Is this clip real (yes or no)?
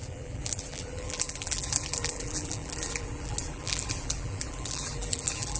no